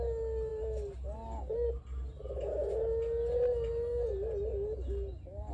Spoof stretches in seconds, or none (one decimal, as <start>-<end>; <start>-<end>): none